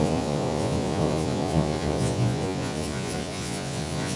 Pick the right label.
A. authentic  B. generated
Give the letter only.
B